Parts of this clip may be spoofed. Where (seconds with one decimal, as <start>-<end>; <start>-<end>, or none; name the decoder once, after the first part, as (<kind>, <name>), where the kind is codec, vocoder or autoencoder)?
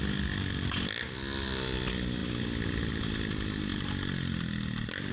none